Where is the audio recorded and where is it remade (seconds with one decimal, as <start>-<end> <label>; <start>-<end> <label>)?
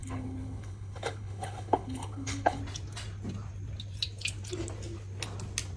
0.0-2.6 remade; 2.6-5.8 recorded